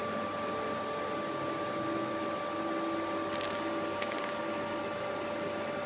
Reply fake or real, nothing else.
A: real